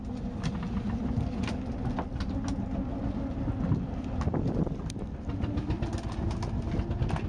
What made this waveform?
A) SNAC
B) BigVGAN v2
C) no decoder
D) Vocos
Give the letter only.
C